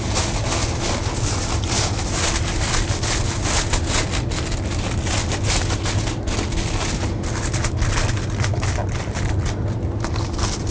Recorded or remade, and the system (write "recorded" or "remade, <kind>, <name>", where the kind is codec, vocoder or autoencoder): recorded